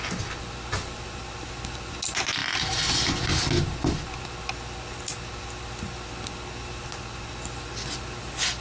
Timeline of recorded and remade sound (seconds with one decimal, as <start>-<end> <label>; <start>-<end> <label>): 0.0-8.6 recorded